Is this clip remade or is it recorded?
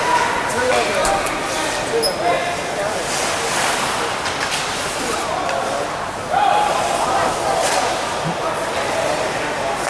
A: recorded